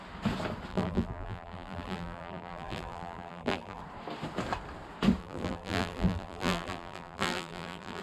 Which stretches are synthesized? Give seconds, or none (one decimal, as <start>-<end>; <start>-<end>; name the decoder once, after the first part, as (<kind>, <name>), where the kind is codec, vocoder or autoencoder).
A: 0.7-3.8 (vocoder, BigVGAN v2); 5.2-8.0